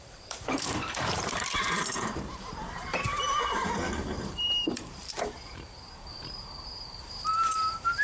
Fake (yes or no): yes